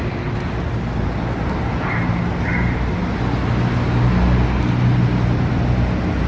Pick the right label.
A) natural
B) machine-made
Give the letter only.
A